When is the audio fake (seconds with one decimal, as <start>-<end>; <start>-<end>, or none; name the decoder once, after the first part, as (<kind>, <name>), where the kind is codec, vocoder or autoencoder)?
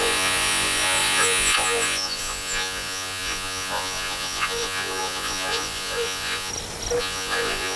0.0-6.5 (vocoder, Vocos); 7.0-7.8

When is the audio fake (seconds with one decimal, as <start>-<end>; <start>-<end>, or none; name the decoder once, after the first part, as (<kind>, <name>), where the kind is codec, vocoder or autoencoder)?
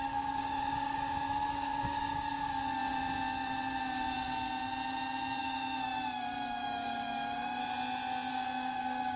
0.0-2.8 (codec, DAC); 5.4-7.6; 8.3-9.2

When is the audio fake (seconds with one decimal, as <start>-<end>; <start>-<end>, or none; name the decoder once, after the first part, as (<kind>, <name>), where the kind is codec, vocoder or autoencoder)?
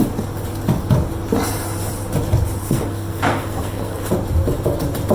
2.6-4.1 (codec, SNAC)